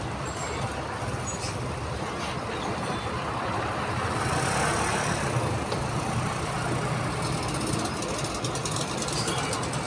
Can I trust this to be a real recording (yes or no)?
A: yes